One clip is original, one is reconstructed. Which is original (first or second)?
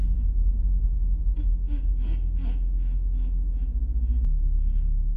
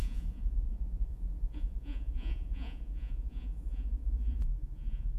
first